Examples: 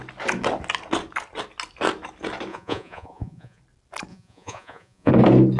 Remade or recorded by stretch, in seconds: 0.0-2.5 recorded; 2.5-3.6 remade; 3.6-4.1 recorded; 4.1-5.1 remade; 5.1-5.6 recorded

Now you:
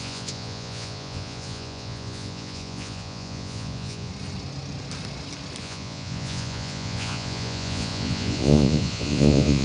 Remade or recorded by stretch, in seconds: 0.0-4.1 remade; 4.1-5.6 recorded; 5.6-9.6 remade

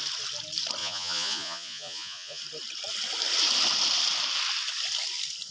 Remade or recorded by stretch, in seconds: 0.0-0.8 recorded; 0.8-2.4 remade; 2.4-5.5 recorded

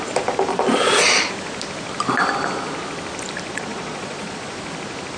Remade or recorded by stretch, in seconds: 0.0-0.5 recorded; 0.5-1.2 remade; 1.2-3.5 recorded; 3.5-4.5 remade; 4.5-5.2 recorded

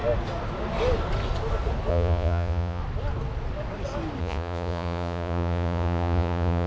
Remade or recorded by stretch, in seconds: 0.0-1.9 recorded; 1.9-2.8 remade; 2.8-4.2 recorded; 4.2-6.7 remade

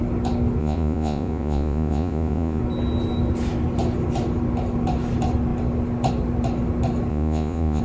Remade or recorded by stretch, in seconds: 0.0-0.6 recorded; 0.6-2.6 remade; 2.6-7.1 recorded; 7.1-7.8 remade